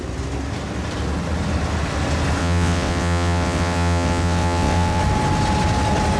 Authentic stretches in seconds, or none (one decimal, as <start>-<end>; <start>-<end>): 0.0-2.4; 5.0-6.2